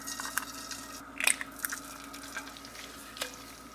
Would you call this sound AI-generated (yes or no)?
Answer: no